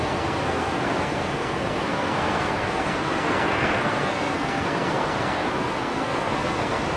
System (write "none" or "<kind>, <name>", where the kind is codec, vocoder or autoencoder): codec, SNAC